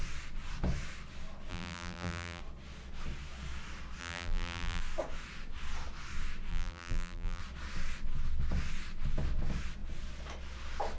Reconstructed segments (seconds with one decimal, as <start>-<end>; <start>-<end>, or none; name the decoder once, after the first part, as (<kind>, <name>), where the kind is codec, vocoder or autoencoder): 1.5-2.4 (vocoder, BigVGAN v2); 4.0-4.8; 6.5-7.4